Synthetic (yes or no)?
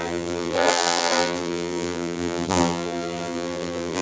yes